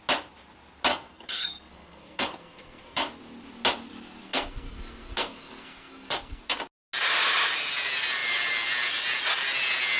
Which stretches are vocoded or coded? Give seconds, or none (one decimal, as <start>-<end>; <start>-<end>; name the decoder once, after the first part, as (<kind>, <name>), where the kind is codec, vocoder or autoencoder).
0.9-3.2 (codec, SNAC); 4.2-6.6